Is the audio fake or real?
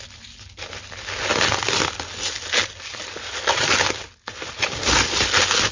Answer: real